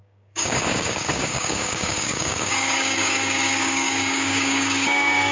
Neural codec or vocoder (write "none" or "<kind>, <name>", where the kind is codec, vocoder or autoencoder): codec, DAC